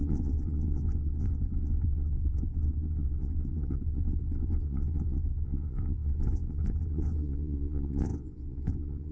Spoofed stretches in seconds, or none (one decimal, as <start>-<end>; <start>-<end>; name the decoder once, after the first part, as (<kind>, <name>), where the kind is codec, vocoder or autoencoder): 0.0-9.1 (vocoder, Vocos)